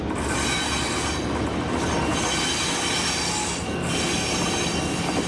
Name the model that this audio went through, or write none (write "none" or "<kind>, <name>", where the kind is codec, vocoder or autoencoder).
none